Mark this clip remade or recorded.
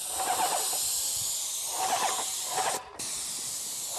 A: recorded